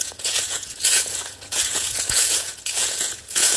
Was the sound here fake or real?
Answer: fake